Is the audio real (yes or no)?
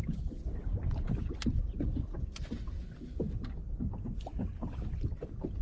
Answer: yes